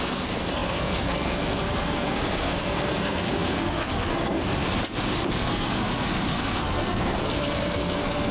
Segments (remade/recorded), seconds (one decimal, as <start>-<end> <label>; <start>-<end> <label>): 0.0-4.4 remade; 4.4-5.3 recorded; 5.3-8.3 remade